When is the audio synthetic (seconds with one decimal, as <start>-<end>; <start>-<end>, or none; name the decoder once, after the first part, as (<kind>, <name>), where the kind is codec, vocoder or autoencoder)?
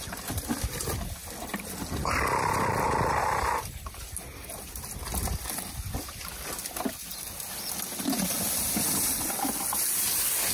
0.0-1.2 (vocoder, BigVGAN v2); 3.2-6.2; 8.2-10.5